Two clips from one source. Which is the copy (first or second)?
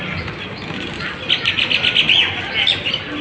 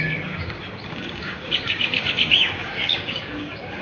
second